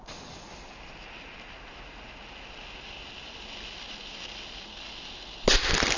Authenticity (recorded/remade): recorded